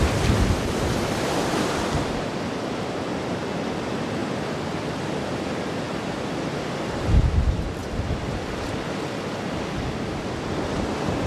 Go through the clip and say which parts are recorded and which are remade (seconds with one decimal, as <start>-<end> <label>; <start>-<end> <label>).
0.0-4.2 remade; 4.2-4.9 recorded; 4.9-7.8 remade; 7.8-10.2 recorded; 10.2-11.3 remade